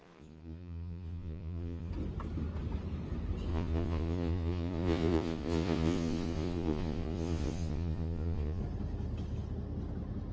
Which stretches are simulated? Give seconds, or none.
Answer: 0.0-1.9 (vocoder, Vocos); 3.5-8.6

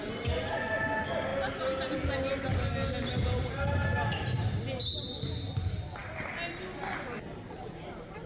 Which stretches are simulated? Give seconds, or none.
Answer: none

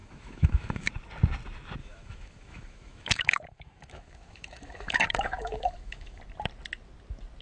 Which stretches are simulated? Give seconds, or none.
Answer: 0.0-0.9 (autoencoder, DAC-VAE); 1.8-6.2

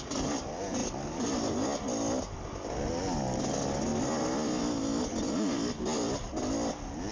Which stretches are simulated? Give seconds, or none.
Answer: none